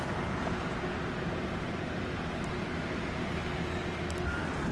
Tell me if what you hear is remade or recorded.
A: recorded